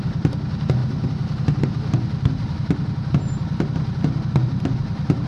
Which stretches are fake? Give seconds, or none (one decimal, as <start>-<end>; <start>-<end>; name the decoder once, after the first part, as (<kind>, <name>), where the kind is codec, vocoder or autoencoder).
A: none